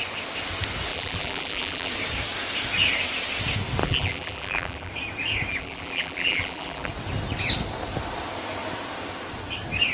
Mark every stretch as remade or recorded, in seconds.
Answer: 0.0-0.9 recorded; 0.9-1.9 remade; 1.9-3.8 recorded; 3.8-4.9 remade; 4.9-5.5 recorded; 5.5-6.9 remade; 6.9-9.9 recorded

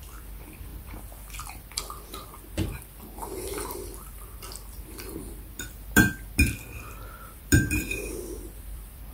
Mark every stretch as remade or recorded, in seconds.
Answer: 0.0-9.1 remade

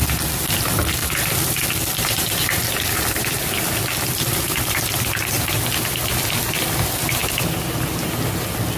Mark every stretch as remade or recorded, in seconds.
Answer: 0.0-1.0 recorded; 1.0-5.0 remade; 5.0-8.8 recorded

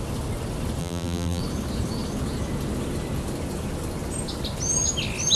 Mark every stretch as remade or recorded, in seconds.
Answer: 0.0-0.8 recorded; 0.8-1.4 remade; 1.4-5.4 recorded

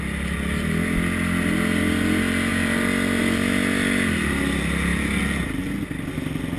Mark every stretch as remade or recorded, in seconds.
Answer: 0.0-6.6 recorded

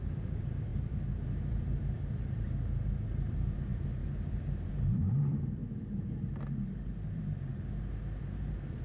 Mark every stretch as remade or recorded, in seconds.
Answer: 0.0-7.5 remade; 7.5-8.2 recorded; 8.2-8.8 remade

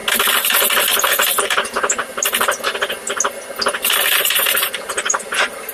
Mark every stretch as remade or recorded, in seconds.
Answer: 0.0-1.4 recorded; 1.4-2.0 remade; 2.0-4.2 recorded; 4.2-5.7 remade